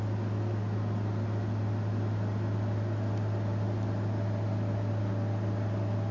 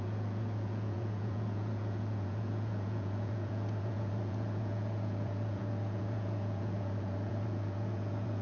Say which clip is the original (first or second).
first